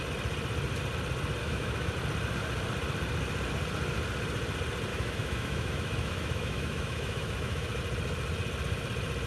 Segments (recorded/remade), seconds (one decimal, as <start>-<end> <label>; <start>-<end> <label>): 0.0-1.4 recorded; 1.4-1.9 remade; 1.9-4.9 recorded; 4.9-7.8 remade; 7.8-9.3 recorded

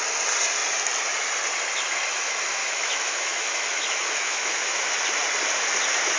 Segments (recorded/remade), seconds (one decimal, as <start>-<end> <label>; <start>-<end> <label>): 0.0-2.6 recorded; 2.6-4.9 remade; 4.9-6.2 recorded

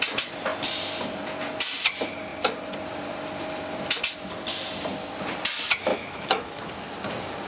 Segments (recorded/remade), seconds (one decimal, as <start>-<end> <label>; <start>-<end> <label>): 0.0-5.9 recorded; 5.9-6.7 remade; 6.7-7.5 recorded

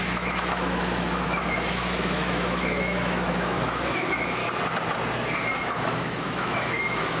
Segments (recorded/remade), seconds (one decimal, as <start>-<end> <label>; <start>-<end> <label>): 0.0-4.4 remade; 4.4-5.8 recorded; 5.8-7.2 remade

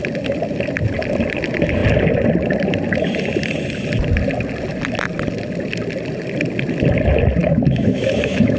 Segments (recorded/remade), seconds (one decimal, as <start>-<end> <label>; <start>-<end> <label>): 0.0-7.4 recorded; 7.4-8.6 remade